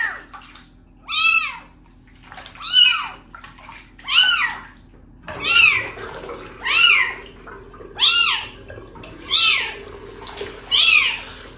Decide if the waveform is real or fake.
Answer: real